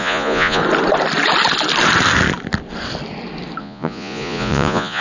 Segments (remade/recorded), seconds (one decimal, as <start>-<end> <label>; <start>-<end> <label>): 0.0-0.6 remade; 0.6-3.6 recorded; 3.6-5.0 remade